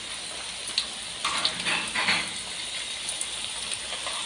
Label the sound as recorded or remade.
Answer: recorded